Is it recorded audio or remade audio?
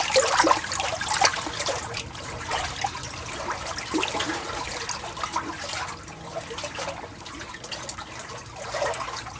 recorded